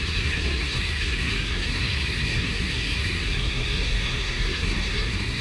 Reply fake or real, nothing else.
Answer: fake